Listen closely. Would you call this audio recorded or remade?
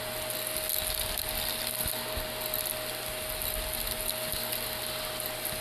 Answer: recorded